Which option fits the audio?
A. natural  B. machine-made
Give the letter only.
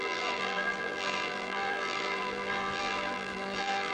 B